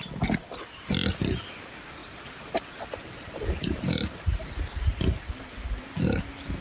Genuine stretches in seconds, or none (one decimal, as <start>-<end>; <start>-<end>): 0.0-2.0; 5.4-6.6

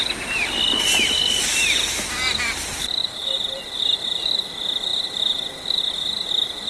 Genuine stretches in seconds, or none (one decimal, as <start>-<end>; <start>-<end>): 0.0-3.0; 3.6-6.7